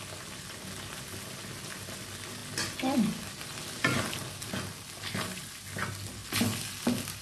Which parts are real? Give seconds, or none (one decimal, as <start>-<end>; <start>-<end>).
0.0-7.2